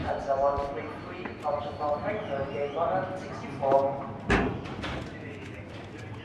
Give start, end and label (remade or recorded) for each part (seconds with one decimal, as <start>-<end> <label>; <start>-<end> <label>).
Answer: 0.0-5.1 recorded; 5.1-5.7 remade; 5.7-6.2 recorded